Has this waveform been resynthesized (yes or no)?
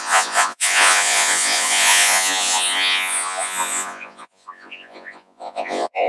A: yes